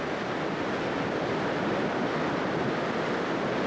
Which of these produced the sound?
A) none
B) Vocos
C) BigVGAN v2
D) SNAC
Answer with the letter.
A